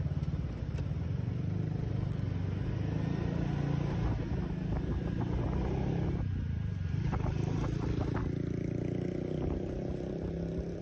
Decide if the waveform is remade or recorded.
recorded